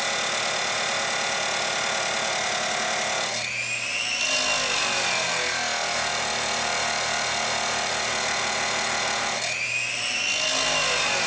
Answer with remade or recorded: recorded